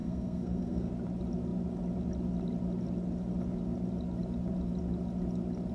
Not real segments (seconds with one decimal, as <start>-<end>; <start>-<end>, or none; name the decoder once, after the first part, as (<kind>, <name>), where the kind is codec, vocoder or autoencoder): 0.0-0.9 (codec, SNAC)